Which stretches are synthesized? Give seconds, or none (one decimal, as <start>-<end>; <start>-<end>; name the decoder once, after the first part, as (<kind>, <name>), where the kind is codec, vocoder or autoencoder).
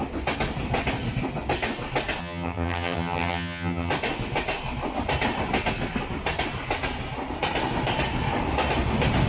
2.2-3.9 (vocoder, HiFi-GAN)